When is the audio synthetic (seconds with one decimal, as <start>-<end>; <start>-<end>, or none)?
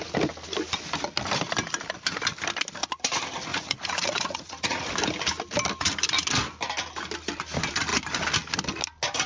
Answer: 3.5-4.8